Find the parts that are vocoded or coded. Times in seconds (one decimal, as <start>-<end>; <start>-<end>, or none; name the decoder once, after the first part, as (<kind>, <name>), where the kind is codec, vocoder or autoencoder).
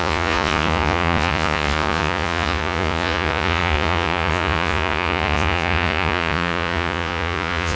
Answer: 0.0-7.7 (vocoder, Vocos)